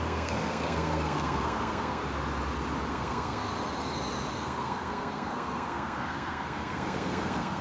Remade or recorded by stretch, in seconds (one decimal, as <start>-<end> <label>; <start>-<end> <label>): 0.0-2.0 remade; 2.0-2.9 recorded; 2.9-3.5 remade; 3.5-4.3 recorded; 4.3-7.6 remade